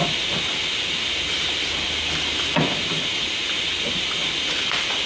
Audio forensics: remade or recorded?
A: recorded